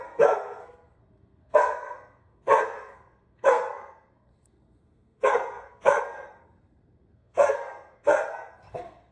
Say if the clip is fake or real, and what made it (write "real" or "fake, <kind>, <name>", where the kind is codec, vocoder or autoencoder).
fake, codec, SNAC